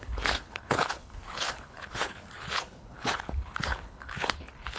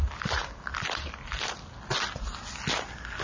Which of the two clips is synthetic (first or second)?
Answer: first